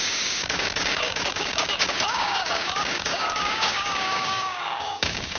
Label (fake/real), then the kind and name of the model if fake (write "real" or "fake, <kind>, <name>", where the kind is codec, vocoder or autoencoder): fake, codec, DAC